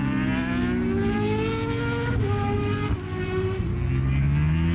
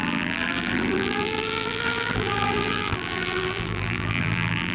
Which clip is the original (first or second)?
first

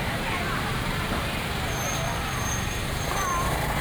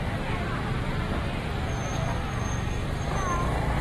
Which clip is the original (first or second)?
second